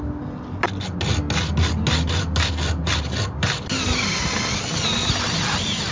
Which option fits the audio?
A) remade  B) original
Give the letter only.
B